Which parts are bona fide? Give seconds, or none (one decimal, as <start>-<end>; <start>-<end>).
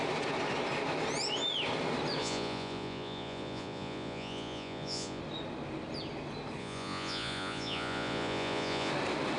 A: 0.0-2.2; 5.2-6.6; 8.9-9.4